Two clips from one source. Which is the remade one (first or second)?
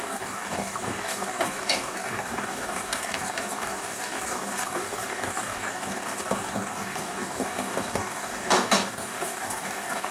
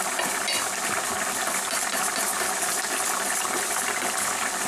first